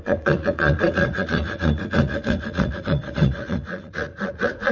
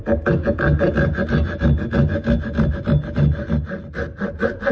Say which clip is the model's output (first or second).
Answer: first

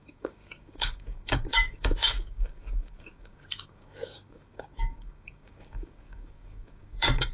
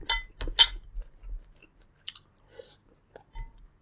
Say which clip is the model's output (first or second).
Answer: first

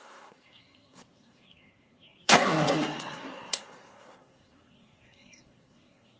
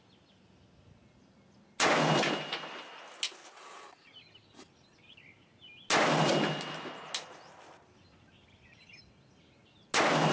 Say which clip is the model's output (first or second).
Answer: first